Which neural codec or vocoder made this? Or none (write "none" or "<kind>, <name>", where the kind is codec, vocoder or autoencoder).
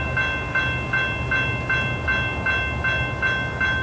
none